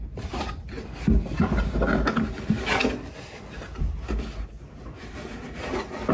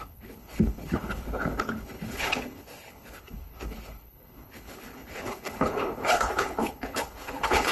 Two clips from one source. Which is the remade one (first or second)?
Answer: second